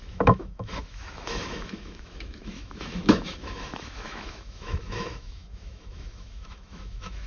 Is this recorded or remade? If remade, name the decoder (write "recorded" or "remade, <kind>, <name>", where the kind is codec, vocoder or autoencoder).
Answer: remade, autoencoder, DAC-VAE